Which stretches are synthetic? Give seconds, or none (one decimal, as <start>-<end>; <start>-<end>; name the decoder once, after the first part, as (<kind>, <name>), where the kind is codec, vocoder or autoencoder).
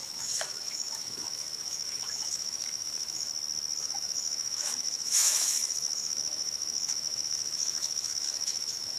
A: 0.0-3.3 (autoencoder, DAC-VAE); 3.8-9.0